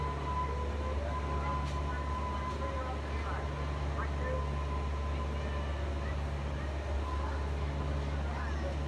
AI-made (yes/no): no